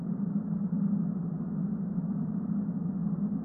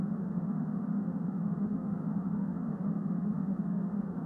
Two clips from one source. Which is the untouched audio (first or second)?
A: first